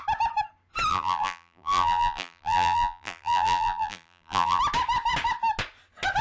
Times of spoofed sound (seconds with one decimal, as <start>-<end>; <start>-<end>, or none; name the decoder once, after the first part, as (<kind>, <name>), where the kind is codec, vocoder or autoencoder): 0.9-4.6 (vocoder, BigVGAN v2)